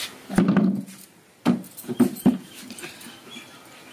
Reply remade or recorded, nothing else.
recorded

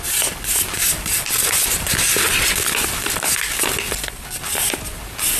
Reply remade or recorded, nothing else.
recorded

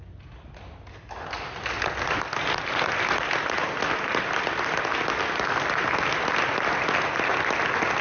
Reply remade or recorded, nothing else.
recorded